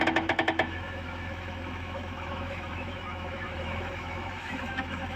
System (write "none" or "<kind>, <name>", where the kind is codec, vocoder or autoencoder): autoencoder, DAC-VAE